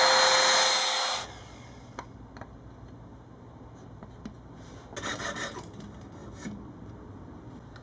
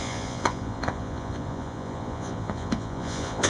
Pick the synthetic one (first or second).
second